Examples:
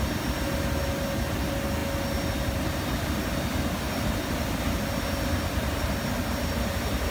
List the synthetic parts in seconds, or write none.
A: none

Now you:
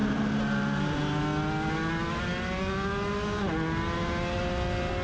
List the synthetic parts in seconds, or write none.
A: 0.0-1.0 (vocoder, BigVGAN v2)